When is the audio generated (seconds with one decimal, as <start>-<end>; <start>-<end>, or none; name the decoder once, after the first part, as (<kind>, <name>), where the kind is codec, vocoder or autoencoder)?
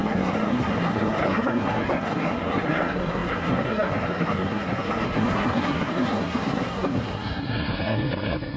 0.0-8.6 (codec, SNAC)